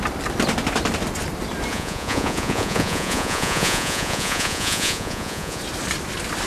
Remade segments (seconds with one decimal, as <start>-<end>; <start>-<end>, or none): 1.7-5.6